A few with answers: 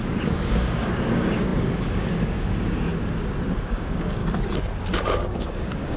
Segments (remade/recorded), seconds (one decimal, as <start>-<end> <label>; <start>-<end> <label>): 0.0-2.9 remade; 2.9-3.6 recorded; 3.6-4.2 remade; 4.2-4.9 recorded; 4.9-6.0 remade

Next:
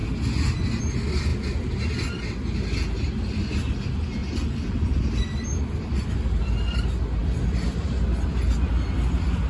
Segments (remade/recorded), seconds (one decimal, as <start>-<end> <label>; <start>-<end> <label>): 0.0-4.2 recorded; 4.2-6.4 remade; 6.4-9.5 recorded

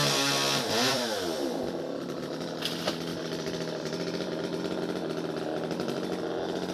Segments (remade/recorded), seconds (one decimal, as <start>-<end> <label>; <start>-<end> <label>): 0.0-0.9 recorded; 0.9-1.6 remade; 1.6-3.1 recorded; 3.1-4.6 remade; 4.6-6.7 recorded

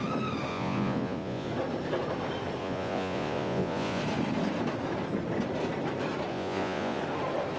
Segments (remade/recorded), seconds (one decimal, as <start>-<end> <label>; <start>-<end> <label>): 0.0-0.5 recorded; 0.5-1.5 remade; 1.5-2.6 recorded; 2.6-4.0 remade; 4.0-6.3 recorded; 6.3-7.0 remade; 7.0-7.6 recorded

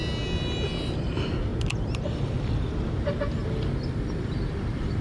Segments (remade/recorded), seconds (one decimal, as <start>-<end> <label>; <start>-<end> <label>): 0.0-5.0 recorded